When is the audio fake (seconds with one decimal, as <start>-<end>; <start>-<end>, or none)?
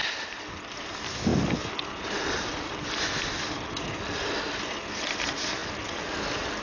none